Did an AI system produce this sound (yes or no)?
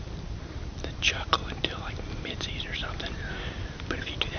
no